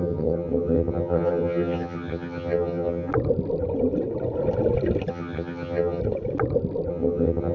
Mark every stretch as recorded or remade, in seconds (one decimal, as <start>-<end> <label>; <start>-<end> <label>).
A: 0.0-3.1 remade; 3.1-5.1 recorded; 5.1-6.0 remade; 6.0-6.9 recorded; 6.9-7.5 remade